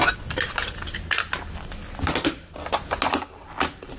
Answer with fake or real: real